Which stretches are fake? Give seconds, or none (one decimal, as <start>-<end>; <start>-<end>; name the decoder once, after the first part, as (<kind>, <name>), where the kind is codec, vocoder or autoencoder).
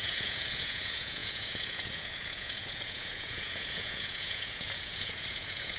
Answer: 0.0-5.8 (vocoder, Vocos)